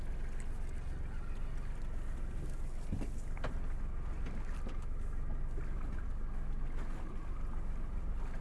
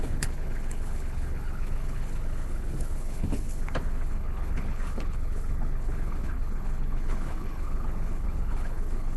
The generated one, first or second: second